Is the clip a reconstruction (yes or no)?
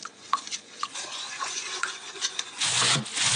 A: yes